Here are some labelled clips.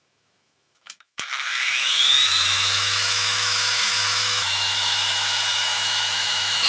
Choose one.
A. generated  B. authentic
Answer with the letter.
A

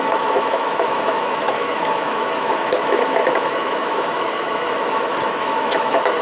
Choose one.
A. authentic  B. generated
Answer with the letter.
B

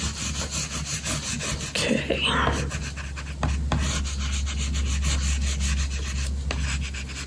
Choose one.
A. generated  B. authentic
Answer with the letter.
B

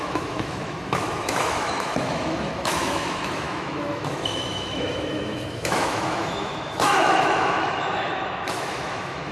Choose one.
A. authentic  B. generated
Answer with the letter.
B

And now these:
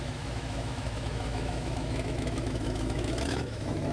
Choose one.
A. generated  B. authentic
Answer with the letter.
A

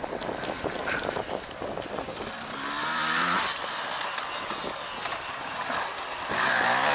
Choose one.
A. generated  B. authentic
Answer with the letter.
B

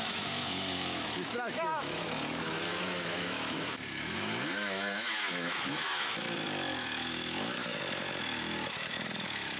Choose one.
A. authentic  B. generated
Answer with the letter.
B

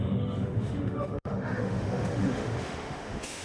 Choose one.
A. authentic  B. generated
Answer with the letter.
B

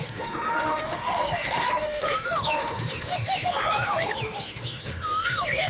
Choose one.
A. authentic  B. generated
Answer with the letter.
B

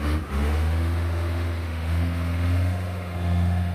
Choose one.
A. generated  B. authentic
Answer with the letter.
A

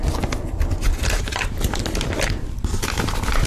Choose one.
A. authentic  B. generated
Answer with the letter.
A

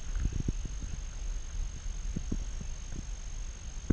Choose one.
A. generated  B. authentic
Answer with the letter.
B